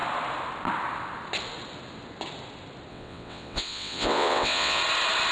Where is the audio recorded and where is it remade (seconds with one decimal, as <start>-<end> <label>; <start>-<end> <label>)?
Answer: 0.0-2.9 recorded; 2.9-4.8 remade; 4.8-5.3 recorded